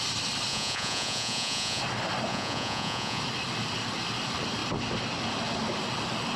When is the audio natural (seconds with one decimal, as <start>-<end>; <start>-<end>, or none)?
0.0-0.5; 1.8-2.3; 3.2-6.4